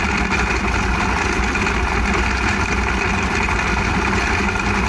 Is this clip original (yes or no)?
yes